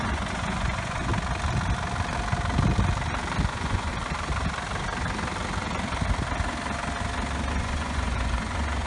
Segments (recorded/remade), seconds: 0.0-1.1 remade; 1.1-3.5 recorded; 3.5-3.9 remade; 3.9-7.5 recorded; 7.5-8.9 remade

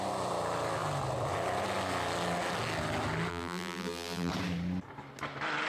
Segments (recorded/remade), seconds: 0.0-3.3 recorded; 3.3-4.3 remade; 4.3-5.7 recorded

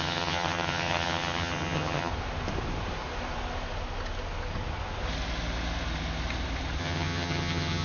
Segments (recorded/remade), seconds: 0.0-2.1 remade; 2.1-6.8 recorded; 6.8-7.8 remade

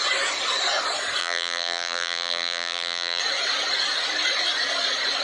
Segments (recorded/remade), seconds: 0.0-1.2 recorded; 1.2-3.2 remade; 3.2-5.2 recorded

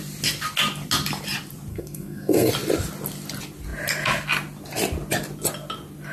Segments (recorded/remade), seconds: 0.0-1.7 recorded; 1.7-2.5 remade; 2.5-6.1 recorded